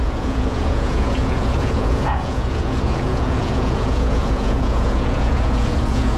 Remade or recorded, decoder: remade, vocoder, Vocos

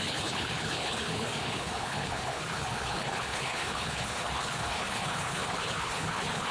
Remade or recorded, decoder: remade, codec, HILCodec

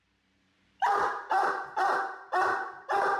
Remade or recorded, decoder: remade, vocoder, BigVGAN v2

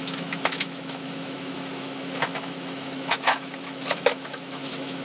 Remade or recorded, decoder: remade, autoencoder, DAC-VAE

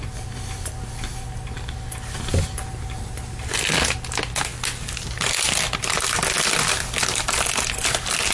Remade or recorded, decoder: recorded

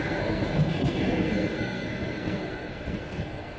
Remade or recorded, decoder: remade, codec, SNAC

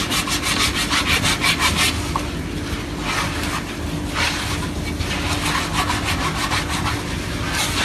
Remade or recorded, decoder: recorded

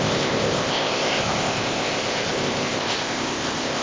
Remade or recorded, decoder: remade, codec, ZipCodec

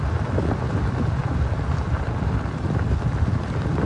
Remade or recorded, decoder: remade, vocoder, BigVGAN v2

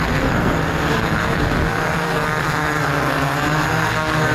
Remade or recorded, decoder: remade, codec, SNAC